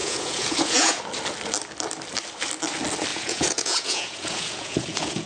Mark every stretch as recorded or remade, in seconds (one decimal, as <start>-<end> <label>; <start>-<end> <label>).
0.0-1.0 remade; 1.0-3.1 recorded; 3.1-5.3 remade